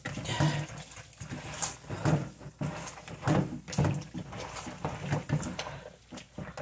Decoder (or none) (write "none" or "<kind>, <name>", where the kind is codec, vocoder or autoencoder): none